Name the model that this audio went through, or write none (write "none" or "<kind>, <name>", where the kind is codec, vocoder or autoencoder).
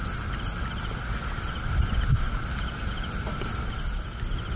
none